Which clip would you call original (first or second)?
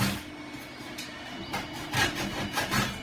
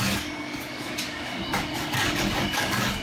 first